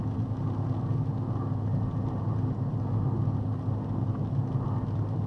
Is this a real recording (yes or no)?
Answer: yes